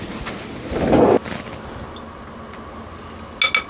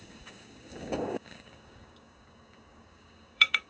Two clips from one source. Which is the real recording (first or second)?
first